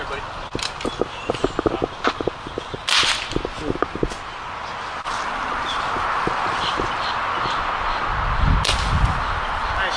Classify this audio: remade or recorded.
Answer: recorded